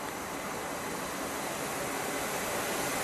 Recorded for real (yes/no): yes